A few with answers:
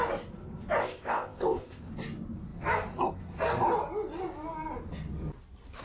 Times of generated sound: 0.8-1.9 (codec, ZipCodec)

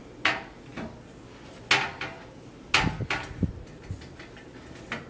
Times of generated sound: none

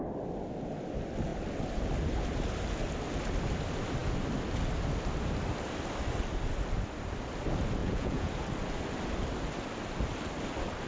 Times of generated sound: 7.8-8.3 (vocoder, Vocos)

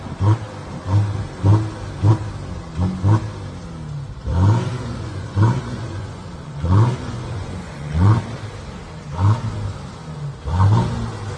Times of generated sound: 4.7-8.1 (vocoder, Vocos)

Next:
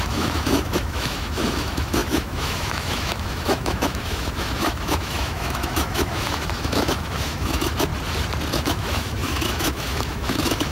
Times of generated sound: 0.0-7.9 (autoencoder, DAC-VAE); 8.5-10.7

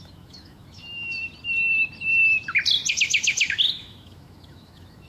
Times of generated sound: 0.0-1.2 (autoencoder, DAC-VAE); 2.9-5.1